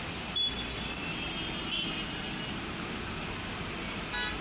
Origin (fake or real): real